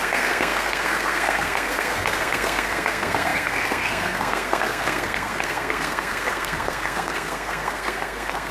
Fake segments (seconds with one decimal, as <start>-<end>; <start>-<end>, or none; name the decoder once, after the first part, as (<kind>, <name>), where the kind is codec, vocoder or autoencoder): 0.0-8.5 (codec, SNAC)